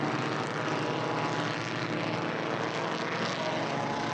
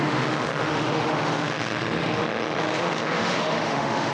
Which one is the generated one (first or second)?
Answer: second